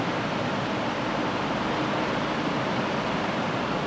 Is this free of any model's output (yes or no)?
yes